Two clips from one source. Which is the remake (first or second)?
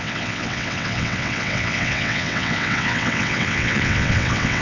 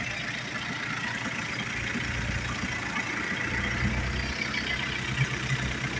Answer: first